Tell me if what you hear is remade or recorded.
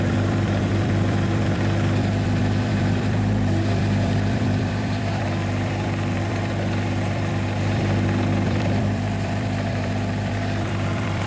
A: remade